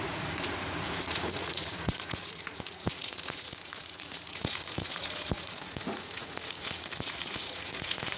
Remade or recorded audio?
remade